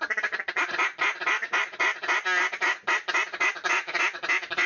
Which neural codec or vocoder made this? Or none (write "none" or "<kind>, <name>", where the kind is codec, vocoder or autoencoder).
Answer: none